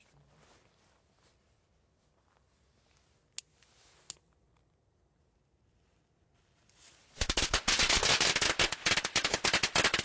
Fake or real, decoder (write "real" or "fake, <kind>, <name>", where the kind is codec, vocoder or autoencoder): real